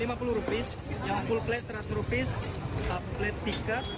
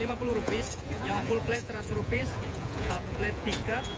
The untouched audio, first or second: first